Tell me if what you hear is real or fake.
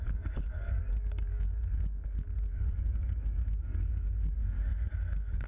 fake